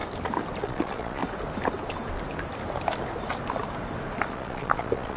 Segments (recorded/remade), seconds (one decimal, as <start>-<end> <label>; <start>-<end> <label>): 0.0-0.6 recorded; 0.6-1.2 remade; 1.2-4.3 recorded; 4.3-5.2 remade